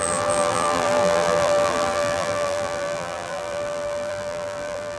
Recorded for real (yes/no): no